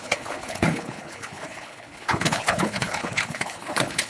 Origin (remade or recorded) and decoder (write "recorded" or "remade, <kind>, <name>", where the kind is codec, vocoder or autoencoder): remade, codec, HILCodec